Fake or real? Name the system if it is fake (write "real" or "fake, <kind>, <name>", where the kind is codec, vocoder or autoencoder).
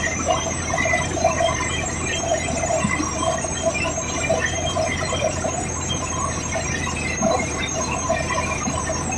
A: fake, vocoder, BigVGAN v2